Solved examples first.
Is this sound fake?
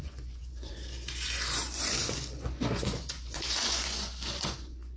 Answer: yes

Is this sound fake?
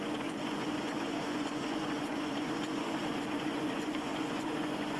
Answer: yes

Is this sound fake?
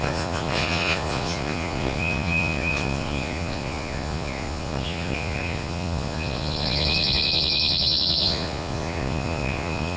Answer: yes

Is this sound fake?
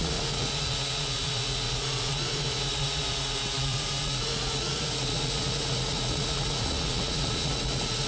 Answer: yes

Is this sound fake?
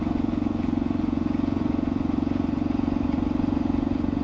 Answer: yes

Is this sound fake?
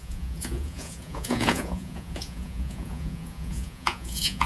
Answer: yes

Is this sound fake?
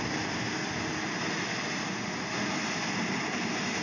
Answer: no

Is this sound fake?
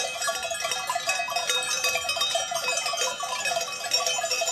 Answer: no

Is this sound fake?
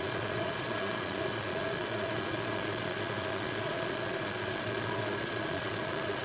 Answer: yes